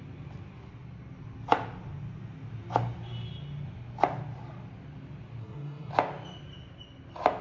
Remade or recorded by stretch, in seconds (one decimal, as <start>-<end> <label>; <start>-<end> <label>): 0.0-5.4 recorded; 5.4-5.9 remade; 5.9-7.4 recorded